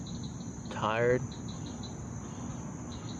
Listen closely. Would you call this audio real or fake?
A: fake